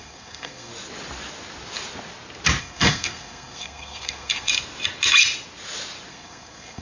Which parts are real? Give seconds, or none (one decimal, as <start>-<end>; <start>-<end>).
0.7-2.6; 4.5-6.1